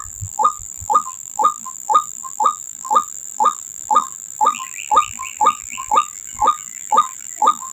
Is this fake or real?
fake